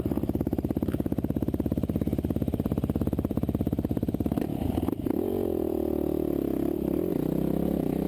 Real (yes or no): no